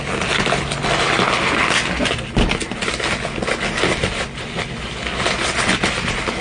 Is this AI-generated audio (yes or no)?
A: no